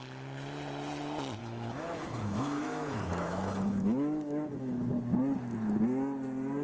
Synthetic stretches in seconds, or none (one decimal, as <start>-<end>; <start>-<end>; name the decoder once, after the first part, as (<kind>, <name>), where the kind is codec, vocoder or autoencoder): 1.4-4.8 (autoencoder, DAC-VAE)